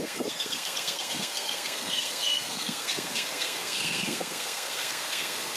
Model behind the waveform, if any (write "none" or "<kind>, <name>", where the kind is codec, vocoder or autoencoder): codec, SNAC